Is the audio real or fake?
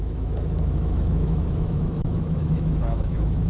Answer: fake